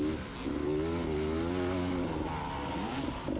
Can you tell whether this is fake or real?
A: real